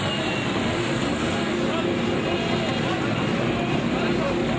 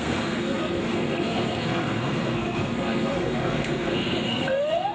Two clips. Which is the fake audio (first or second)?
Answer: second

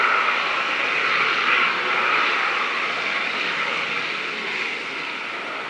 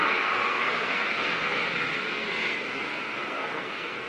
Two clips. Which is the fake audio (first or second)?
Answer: second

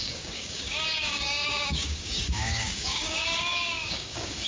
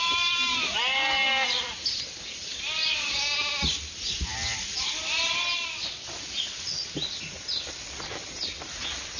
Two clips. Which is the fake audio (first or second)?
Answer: first